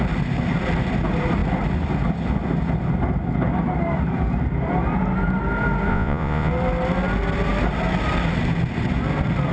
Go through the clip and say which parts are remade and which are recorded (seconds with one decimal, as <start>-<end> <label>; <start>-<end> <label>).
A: 0.0-5.9 recorded; 5.9-6.5 remade; 6.5-9.5 recorded